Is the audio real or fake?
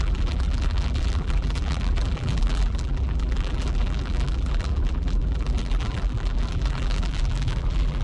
fake